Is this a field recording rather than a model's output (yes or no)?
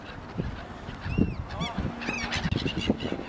yes